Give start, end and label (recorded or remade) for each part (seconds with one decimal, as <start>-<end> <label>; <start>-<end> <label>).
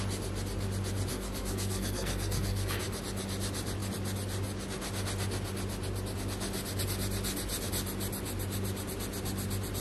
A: 0.0-1.1 recorded; 1.1-2.8 remade; 2.8-9.8 recorded